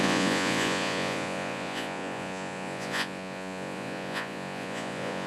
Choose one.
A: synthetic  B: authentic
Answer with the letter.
A